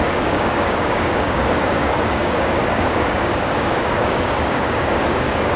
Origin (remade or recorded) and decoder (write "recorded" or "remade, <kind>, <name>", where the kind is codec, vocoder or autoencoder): remade, codec, DAC